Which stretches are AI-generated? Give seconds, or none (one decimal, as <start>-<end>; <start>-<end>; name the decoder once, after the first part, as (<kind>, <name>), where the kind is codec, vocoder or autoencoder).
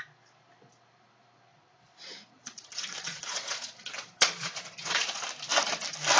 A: 1.5-5.2 (vocoder, Vocos)